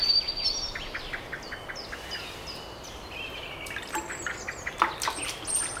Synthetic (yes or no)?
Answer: no